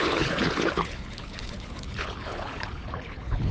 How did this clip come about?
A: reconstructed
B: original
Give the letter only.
A